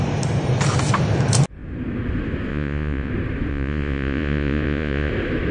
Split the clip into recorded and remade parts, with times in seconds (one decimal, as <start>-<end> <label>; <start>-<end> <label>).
0.0-2.5 recorded; 2.5-3.1 remade; 3.1-3.5 recorded; 3.5-5.1 remade; 5.1-5.5 recorded